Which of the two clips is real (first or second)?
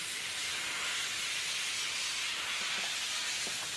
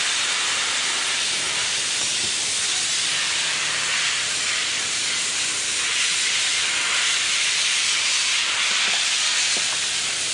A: first